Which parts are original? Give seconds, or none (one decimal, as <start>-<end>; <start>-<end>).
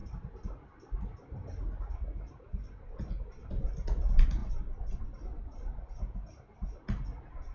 0.0-7.5